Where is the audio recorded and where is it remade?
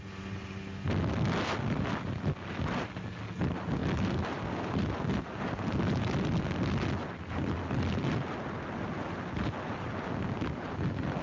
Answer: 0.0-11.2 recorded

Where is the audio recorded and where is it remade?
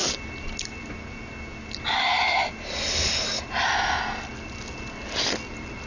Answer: 0.0-5.9 recorded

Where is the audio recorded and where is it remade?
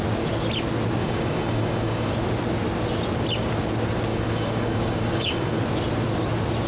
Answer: 0.0-1.0 recorded; 1.0-2.1 remade; 2.1-4.1 recorded; 4.1-5.6 remade; 5.6-6.7 recorded